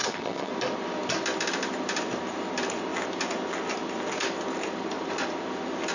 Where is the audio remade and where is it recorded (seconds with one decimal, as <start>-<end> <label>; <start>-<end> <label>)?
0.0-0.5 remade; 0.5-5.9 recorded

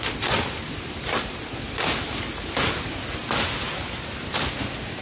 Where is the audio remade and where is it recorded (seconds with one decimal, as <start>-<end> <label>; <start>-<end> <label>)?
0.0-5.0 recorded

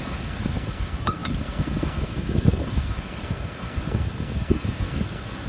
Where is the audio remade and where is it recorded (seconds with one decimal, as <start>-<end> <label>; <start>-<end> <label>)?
0.0-5.5 remade

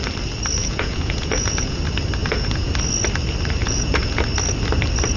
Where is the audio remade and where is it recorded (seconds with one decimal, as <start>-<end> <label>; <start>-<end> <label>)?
0.0-0.6 recorded; 0.6-1.8 remade; 1.8-2.2 recorded; 2.2-2.7 remade; 2.7-3.6 recorded; 3.6-4.2 remade; 4.2-5.2 recorded